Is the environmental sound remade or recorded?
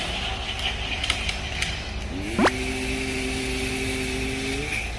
recorded